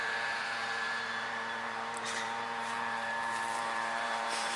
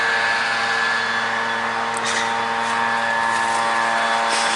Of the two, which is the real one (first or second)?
second